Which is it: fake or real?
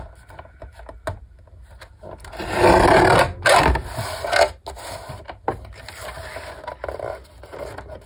real